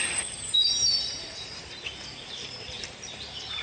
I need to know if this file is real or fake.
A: fake